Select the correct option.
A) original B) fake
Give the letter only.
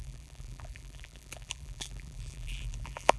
B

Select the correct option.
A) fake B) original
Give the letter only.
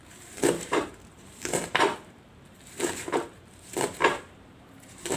A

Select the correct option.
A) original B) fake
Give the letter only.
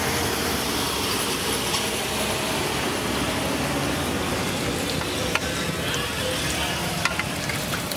A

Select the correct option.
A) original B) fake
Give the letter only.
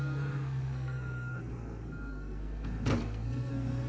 B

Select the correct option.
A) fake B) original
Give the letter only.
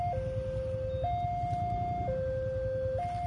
B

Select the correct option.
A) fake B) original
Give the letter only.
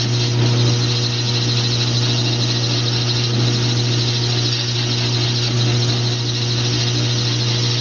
B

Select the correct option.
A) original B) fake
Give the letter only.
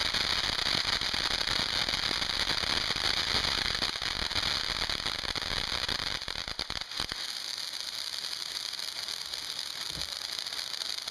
A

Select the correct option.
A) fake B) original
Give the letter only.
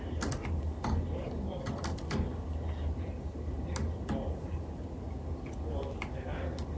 B